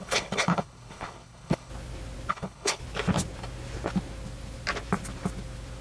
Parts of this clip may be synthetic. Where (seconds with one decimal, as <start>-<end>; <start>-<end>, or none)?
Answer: 0.0-1.7; 2.3-2.8